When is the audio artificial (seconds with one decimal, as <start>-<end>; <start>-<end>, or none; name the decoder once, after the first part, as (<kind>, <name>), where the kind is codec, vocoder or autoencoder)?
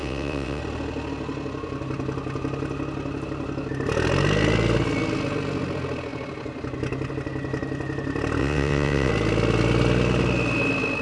0.0-0.6 (vocoder, WaveNeXt); 8.4-9.1